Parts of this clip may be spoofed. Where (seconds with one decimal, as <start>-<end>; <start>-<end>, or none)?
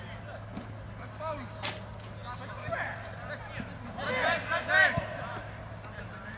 none